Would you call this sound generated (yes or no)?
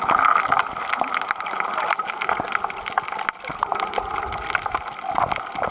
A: no